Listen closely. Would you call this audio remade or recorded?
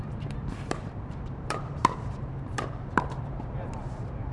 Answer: remade